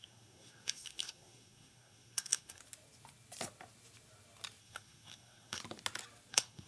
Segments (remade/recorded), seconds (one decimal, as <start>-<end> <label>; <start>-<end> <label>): 0.0-2.6 remade; 2.6-4.6 recorded; 4.6-5.6 remade; 5.6-6.3 recorded; 6.3-6.7 remade